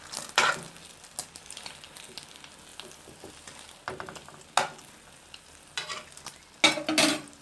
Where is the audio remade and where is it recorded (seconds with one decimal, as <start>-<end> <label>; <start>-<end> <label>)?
0.0-7.4 recorded